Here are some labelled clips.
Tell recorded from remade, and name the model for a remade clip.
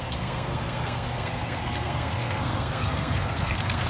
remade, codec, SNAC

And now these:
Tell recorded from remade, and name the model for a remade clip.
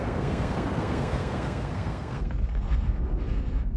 remade, codec, SNAC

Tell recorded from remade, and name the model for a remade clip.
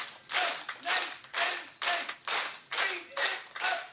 recorded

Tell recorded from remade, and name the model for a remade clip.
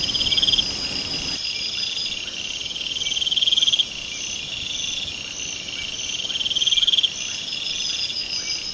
recorded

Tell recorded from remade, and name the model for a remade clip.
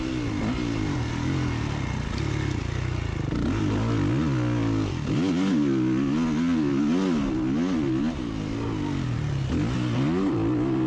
recorded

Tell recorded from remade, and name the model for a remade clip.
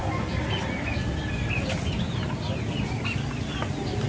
recorded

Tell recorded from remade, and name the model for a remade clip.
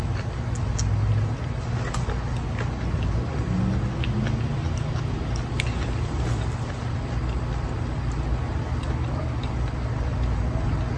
recorded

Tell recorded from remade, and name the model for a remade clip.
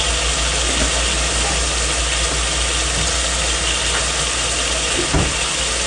recorded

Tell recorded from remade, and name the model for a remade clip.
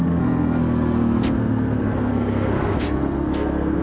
remade, codec, SNAC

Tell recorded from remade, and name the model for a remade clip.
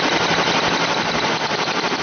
recorded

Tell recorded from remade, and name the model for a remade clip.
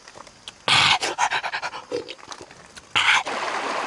recorded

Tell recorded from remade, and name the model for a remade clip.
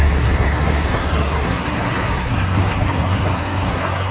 remade, codec, SNAC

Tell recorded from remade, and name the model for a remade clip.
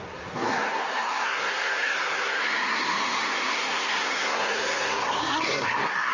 remade, codec, SNAC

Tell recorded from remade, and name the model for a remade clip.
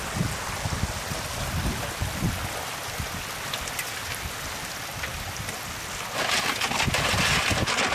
recorded